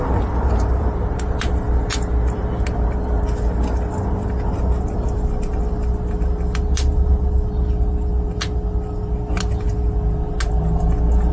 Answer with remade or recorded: recorded